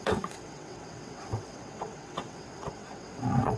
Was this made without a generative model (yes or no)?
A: no